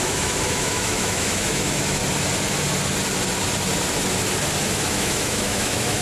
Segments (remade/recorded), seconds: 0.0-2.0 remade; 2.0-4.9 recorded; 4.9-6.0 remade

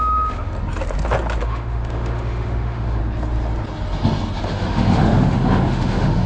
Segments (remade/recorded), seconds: 0.0-0.5 remade; 0.5-1.4 recorded; 1.4-3.0 remade; 3.0-4.4 recorded; 4.4-6.3 remade